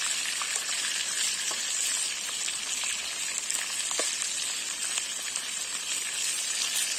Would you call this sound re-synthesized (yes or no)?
no